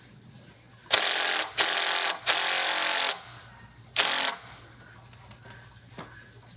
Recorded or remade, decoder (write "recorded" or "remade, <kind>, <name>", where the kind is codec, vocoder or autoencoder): recorded